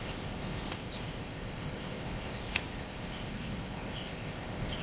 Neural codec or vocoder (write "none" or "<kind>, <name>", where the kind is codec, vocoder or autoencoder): codec, ZipCodec